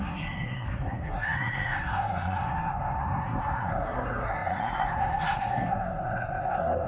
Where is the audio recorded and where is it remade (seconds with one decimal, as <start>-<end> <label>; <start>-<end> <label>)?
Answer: 0.0-6.9 remade